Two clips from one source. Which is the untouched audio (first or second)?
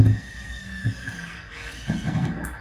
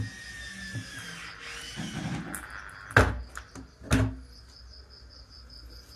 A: second